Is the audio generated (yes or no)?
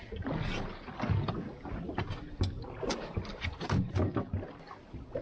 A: no